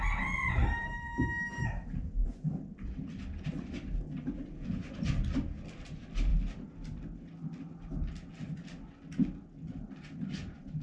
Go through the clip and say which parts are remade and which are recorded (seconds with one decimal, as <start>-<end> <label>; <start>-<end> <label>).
0.0-0.6 recorded; 0.6-2.3 remade; 2.3-10.8 recorded